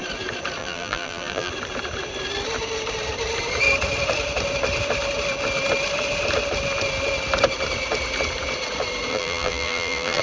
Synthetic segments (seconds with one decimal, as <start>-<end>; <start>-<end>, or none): 0.6-1.5; 9.1-10.2